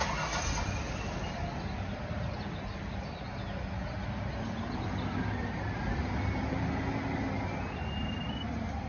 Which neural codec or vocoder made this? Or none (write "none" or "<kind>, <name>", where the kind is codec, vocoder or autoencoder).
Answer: none